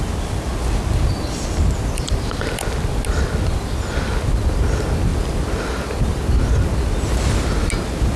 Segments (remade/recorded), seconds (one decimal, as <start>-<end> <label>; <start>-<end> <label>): 0.0-8.2 recorded